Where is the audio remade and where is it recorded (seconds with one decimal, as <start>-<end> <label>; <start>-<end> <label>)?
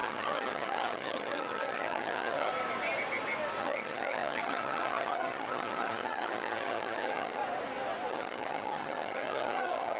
0.0-2.5 remade; 2.5-3.6 recorded; 3.6-7.4 remade; 7.4-8.1 recorded; 8.1-10.0 remade